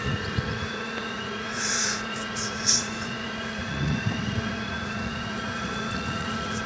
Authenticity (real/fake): fake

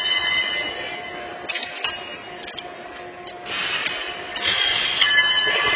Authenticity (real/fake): real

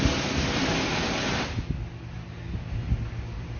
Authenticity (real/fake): real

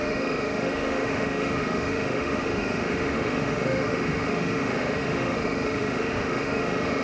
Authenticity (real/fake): fake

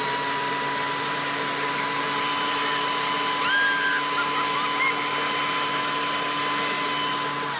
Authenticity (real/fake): real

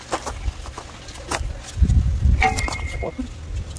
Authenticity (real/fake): real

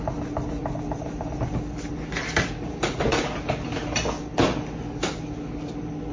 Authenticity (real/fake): real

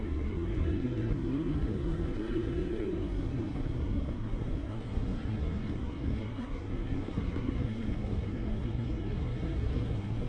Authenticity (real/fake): fake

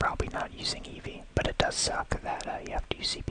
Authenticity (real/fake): real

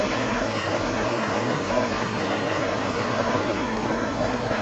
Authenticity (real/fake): fake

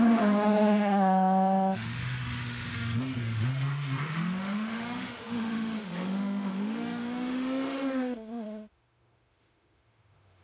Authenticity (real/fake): fake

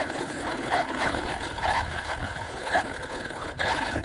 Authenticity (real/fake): fake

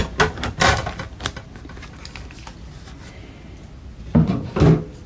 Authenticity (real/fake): real